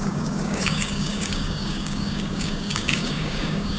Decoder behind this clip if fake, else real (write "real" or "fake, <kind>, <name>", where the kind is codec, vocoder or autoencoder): fake, codec, DAC